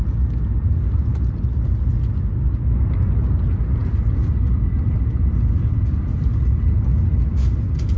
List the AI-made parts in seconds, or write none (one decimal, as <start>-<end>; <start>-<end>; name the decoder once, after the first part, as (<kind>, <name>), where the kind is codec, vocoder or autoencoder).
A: none